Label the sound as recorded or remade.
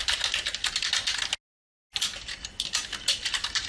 recorded